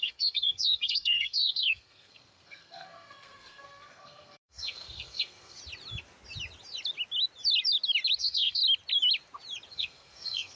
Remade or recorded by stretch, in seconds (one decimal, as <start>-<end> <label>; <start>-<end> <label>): 0.0-5.6 remade; 5.6-8.2 recorded; 8.2-8.6 remade; 8.6-9.7 recorded; 9.7-10.6 remade